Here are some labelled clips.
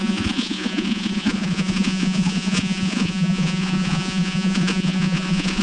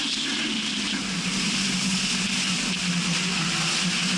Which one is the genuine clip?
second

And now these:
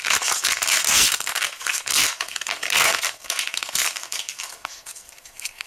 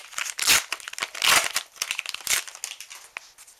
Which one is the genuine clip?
second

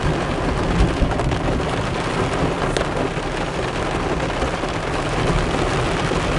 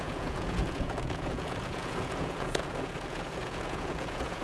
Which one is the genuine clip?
first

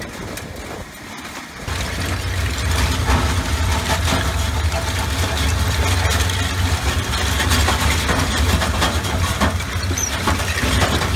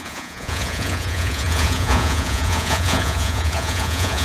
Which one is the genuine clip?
first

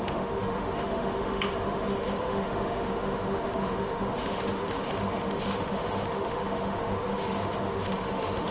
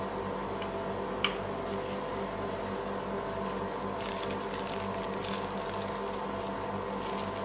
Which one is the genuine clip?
second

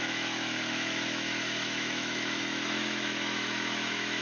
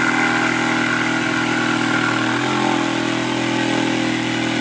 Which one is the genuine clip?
second